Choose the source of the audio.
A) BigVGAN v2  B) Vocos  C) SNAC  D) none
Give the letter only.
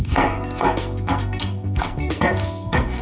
C